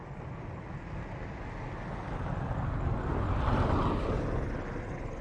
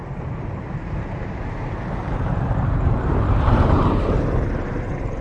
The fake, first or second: second